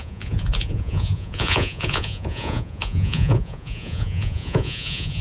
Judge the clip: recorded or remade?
remade